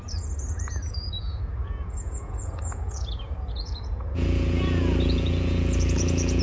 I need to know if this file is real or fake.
fake